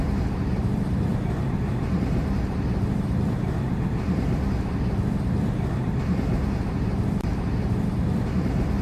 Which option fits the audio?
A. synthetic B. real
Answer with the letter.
A